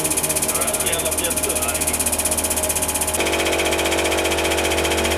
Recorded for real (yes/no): yes